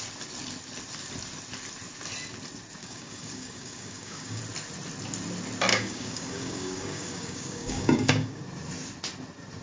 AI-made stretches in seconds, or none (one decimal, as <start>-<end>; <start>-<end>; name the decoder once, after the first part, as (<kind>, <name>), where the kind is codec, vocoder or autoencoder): 2.8-4.4 (codec, DAC); 5.7-8.4